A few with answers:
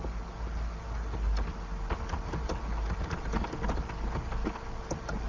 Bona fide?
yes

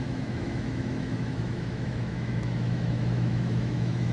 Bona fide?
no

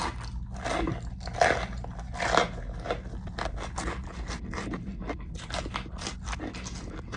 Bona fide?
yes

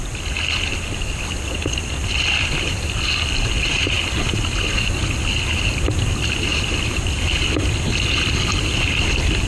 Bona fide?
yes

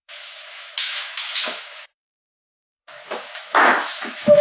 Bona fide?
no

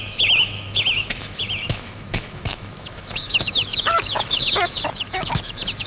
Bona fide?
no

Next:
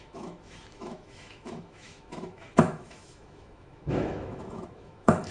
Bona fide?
no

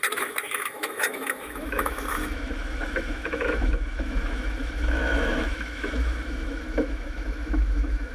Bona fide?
no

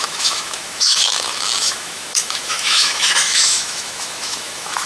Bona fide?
no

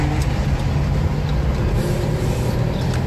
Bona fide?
yes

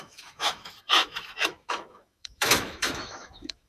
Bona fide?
no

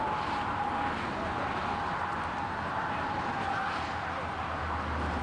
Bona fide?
yes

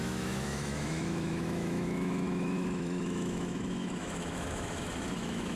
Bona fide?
no